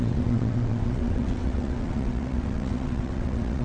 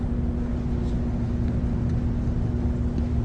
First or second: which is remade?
first